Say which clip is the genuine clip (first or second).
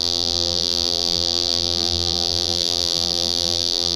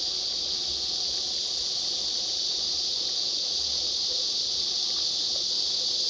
second